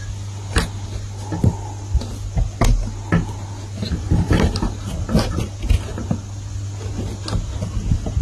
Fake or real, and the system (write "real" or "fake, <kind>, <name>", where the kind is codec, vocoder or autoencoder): real